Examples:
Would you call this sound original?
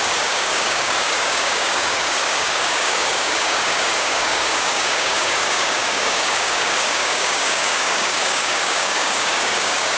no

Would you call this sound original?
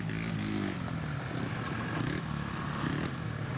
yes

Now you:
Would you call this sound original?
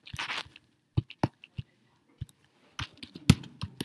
yes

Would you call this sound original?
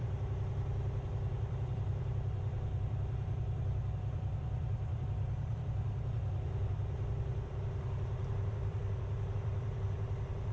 no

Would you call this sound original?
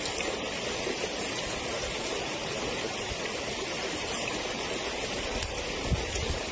yes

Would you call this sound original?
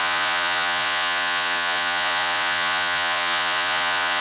no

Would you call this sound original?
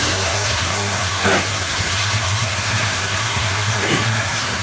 no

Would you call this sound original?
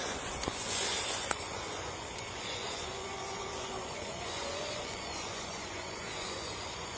no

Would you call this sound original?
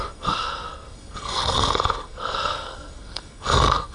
no